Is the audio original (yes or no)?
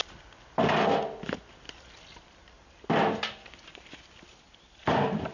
yes